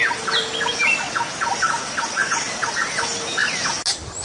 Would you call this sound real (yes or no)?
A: yes